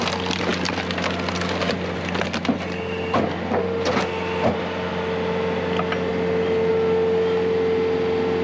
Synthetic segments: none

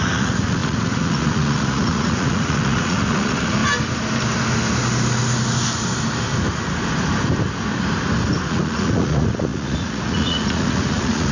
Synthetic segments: 0.0-3.6; 8.5-11.3

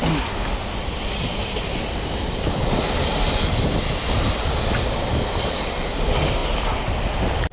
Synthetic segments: none

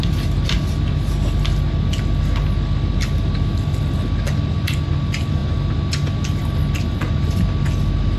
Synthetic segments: none

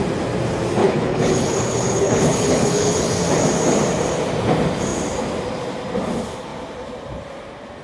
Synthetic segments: 0.8-3.1

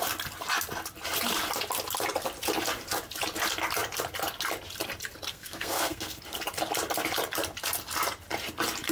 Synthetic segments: 5.3-6.2

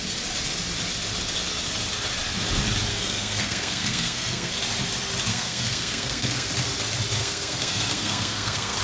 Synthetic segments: 2.9-4.5; 5.3-6.5; 7.2-8.8

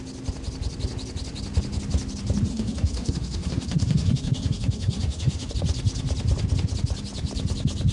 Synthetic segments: 2.5-5.5